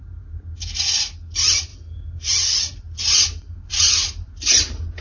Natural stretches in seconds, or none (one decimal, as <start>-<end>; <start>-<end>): 0.0-5.0